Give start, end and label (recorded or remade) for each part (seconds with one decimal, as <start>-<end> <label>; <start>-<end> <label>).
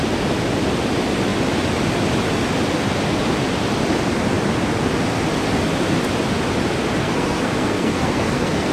0.0-7.0 recorded; 7.0-8.7 remade